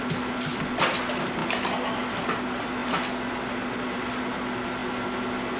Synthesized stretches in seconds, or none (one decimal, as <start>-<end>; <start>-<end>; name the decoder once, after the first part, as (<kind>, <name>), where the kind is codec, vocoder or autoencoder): none